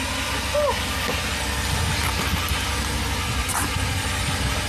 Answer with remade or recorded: recorded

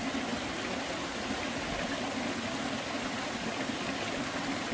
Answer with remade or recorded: recorded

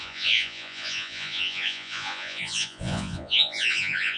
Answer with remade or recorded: remade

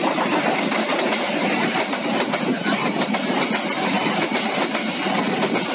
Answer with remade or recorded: recorded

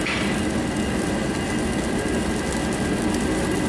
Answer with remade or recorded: recorded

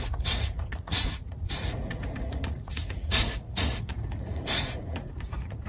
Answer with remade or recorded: remade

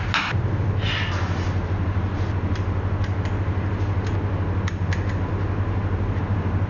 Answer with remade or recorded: recorded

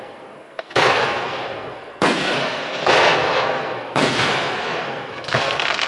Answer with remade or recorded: remade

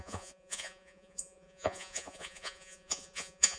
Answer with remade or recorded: remade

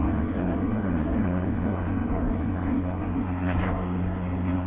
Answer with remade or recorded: remade